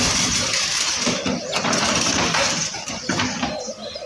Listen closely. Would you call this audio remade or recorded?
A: remade